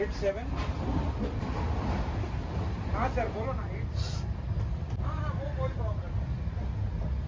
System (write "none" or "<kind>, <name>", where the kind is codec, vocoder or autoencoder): none